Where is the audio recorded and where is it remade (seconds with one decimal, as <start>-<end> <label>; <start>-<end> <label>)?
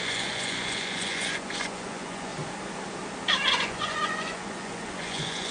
0.0-2.3 remade; 2.3-3.5 recorded; 3.5-5.5 remade